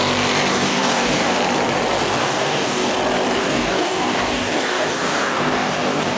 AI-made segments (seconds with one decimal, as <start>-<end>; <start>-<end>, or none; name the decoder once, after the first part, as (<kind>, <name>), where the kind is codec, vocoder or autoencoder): 0.5-1.4 (codec, DAC); 2.2-2.9; 3.4-6.2